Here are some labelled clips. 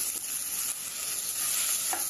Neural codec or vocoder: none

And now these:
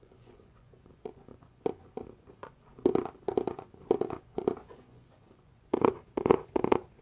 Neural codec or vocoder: vocoder, Vocos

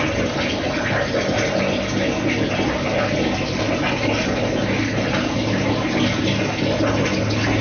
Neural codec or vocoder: none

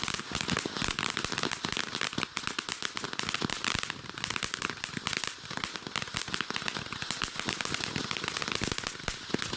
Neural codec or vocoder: none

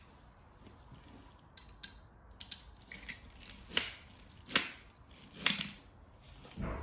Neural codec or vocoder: none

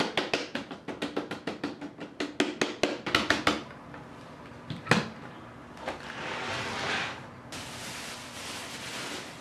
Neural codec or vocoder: none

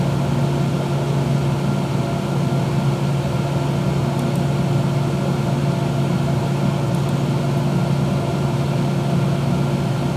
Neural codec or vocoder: none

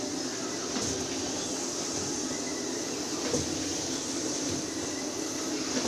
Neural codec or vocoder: none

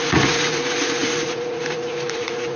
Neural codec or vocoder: vocoder, Vocos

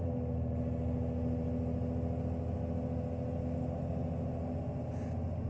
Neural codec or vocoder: none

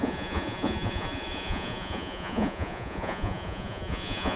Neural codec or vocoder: vocoder, Vocos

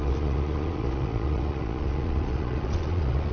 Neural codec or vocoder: vocoder, Vocos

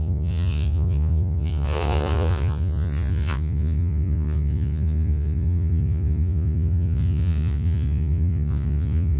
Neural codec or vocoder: vocoder, Vocos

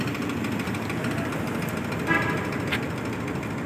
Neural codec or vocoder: none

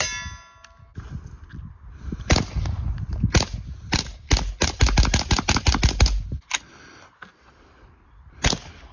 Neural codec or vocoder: none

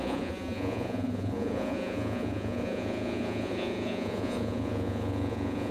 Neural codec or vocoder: vocoder, Vocos